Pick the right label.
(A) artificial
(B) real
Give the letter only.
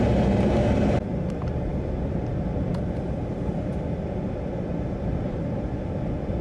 B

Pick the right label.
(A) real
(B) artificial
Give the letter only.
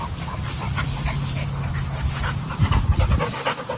A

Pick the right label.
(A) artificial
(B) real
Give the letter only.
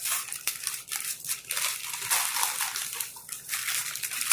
A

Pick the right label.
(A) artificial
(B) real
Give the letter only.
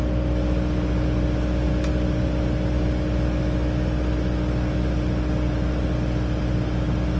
B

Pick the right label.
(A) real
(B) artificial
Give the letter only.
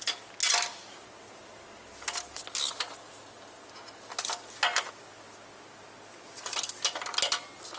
A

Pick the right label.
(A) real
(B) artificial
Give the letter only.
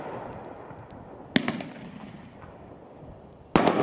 A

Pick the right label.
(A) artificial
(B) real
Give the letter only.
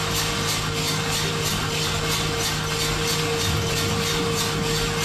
B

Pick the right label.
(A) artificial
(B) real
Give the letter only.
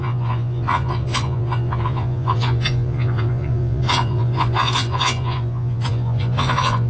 A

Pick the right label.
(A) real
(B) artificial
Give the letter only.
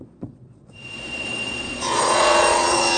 B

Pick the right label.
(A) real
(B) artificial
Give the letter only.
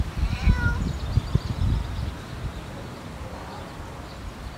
A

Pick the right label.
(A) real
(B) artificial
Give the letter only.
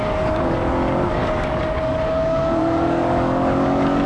B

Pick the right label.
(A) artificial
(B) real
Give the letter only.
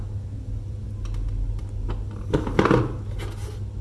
B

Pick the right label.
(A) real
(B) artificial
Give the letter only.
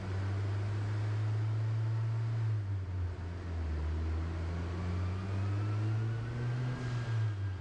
A